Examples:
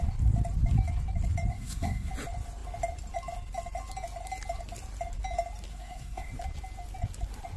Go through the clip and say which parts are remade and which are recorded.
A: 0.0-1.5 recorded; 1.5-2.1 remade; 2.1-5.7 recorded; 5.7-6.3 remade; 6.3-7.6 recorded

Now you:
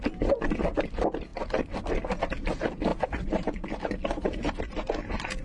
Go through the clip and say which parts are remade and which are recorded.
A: 0.0-2.9 recorded; 2.9-4.6 remade; 4.6-5.4 recorded